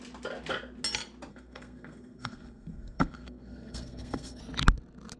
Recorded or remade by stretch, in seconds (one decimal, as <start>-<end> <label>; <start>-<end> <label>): 0.0-1.3 recorded; 1.3-4.4 remade; 4.4-5.2 recorded